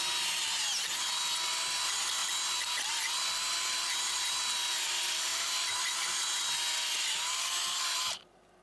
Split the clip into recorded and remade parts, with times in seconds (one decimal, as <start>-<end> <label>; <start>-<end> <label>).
0.0-8.6 recorded